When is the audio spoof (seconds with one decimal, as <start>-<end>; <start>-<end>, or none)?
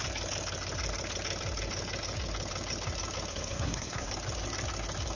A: 3.3-4.1